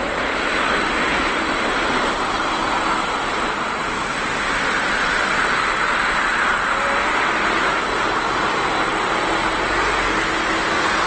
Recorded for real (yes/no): yes